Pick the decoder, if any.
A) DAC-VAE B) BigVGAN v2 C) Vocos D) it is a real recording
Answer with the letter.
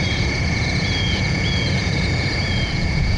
C